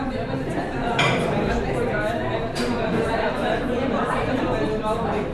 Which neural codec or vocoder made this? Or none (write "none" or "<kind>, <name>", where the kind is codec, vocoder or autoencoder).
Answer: vocoder, BigVGAN v2